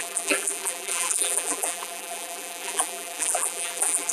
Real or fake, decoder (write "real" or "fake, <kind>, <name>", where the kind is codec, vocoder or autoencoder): fake, vocoder, BigVGAN v2